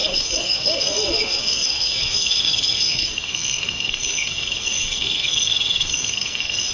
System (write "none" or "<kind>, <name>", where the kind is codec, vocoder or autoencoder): codec, SNAC